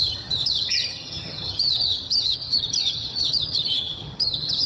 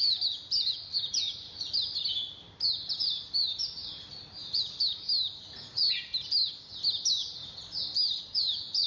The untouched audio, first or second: second